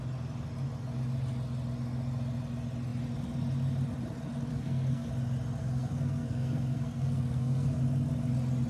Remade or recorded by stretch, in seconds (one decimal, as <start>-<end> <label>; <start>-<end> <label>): 0.0-4.5 recorded; 4.5-5.1 remade; 5.1-5.6 recorded; 5.6-7.8 remade; 7.8-8.7 recorded